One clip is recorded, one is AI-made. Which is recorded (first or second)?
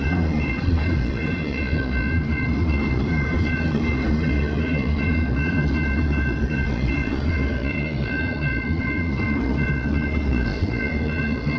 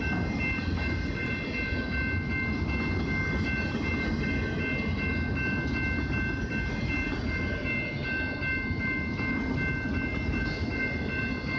second